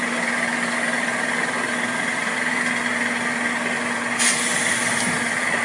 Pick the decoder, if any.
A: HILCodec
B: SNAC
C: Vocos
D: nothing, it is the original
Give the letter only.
D